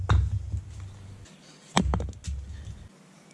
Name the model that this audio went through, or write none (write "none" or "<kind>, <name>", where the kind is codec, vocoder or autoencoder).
none